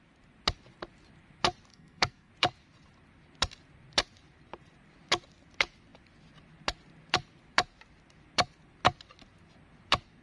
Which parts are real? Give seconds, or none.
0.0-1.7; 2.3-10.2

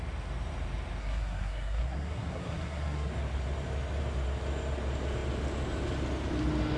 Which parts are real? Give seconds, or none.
0.0-1.0; 3.1-6.8

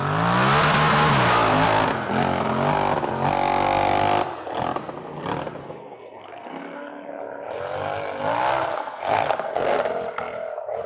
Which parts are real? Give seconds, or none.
0.0-5.6; 7.2-8.7; 9.8-10.9

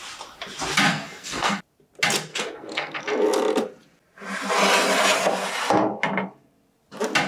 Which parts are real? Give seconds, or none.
0.0-0.9; 1.6-2.3; 3.0-7.3

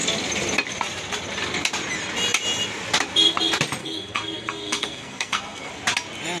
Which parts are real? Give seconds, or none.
0.0-3.8; 5.7-6.4